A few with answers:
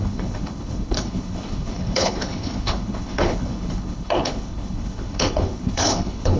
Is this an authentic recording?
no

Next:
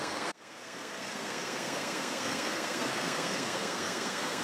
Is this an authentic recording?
no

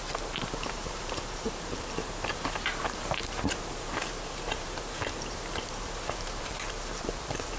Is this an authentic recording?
no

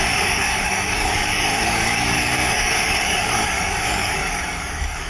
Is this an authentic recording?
no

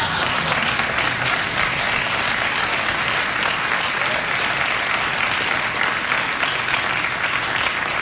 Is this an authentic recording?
yes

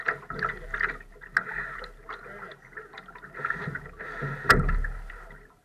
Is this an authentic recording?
yes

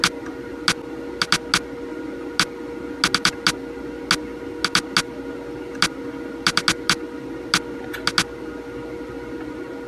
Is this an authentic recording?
yes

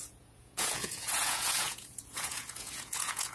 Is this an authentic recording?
no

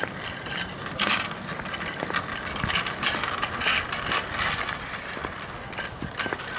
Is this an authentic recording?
yes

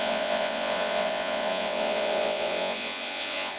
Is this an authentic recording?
no